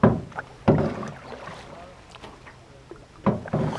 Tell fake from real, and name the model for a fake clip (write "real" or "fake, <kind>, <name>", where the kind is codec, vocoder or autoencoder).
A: real